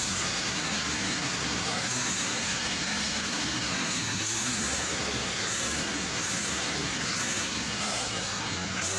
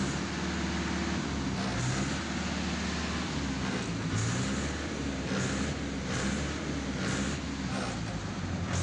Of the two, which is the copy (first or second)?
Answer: first